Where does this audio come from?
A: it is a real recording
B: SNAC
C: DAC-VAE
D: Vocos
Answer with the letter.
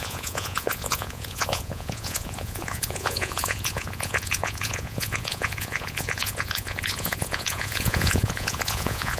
D